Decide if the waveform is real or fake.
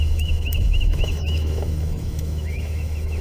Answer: fake